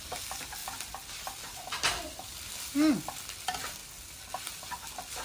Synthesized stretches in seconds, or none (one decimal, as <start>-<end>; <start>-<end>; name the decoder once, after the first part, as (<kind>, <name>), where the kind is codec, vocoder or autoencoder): none